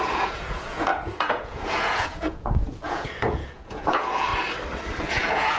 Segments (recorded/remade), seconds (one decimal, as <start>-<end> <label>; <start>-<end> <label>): 0.0-4.3 remade; 4.3-5.0 recorded; 5.0-5.6 remade